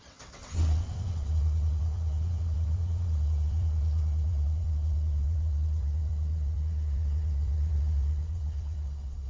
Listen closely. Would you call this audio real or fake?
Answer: fake